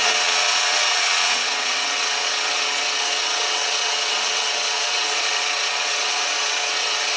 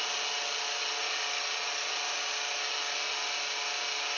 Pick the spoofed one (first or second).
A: first